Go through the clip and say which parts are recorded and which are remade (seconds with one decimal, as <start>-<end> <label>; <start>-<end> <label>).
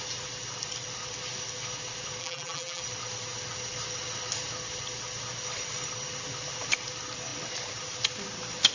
0.0-2.2 recorded; 2.2-2.8 remade; 2.8-8.7 recorded